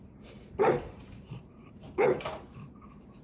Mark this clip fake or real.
fake